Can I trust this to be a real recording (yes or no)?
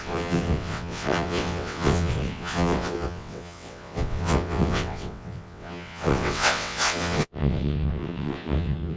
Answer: no